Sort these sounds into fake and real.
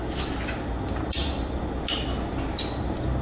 real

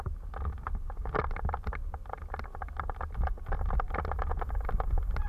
real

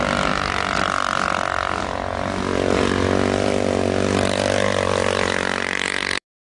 real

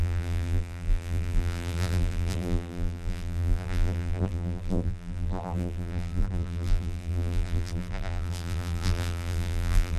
fake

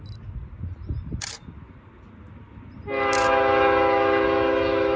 real